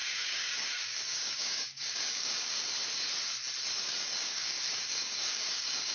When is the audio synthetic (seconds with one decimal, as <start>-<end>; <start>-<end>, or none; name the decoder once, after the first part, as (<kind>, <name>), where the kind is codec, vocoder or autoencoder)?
0.0-2.7 (codec, DAC); 3.7-5.9